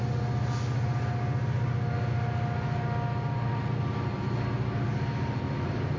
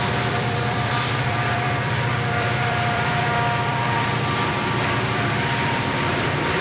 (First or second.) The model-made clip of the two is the second